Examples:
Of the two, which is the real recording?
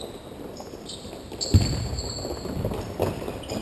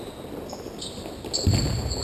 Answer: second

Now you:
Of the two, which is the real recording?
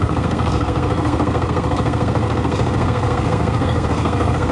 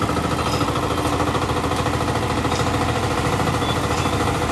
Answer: second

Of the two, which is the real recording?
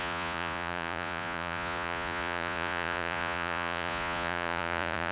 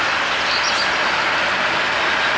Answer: second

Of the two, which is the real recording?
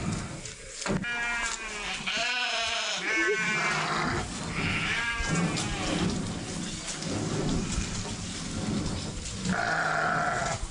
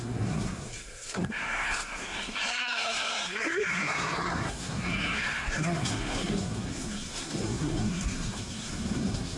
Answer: first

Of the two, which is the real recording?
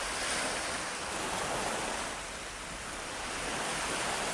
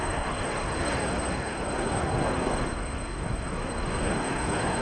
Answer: first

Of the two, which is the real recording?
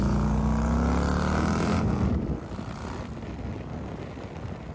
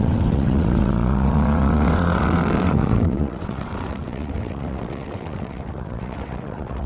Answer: first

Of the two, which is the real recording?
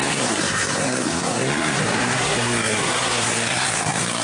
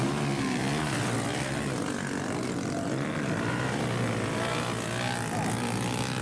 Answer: second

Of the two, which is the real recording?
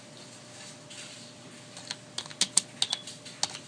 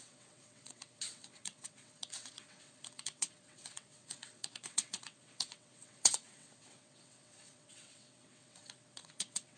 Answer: first